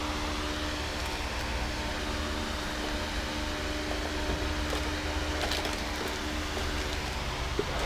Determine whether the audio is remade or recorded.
recorded